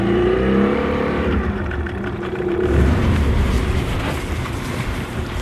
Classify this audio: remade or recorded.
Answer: remade